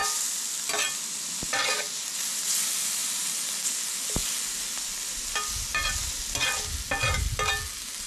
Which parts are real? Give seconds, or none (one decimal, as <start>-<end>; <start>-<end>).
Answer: 0.0-8.1